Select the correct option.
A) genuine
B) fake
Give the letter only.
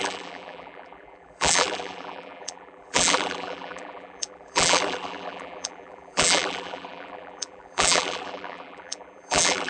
B